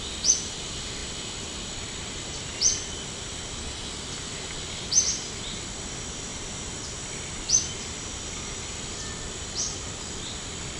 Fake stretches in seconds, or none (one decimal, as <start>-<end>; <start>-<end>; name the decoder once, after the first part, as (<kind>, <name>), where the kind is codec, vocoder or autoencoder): none